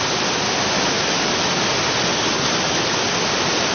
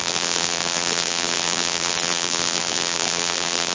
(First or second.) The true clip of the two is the first